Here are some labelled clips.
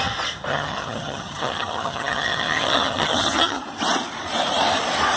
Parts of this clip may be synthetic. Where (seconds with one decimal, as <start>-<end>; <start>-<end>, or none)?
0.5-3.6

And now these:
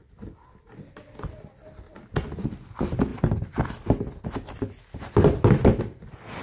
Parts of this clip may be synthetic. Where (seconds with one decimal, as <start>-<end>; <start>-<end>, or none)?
none

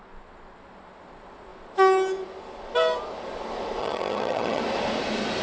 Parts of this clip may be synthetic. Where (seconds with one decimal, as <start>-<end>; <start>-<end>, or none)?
3.8-4.6

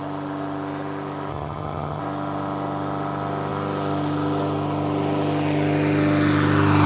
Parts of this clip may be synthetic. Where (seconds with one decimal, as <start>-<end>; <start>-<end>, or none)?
1.3-2.0